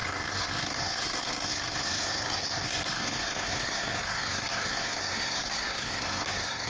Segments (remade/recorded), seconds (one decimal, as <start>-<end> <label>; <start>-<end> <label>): 0.0-6.7 remade